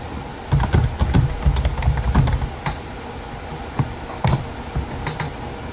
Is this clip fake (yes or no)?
no